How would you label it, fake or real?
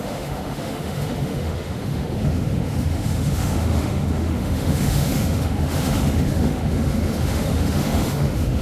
fake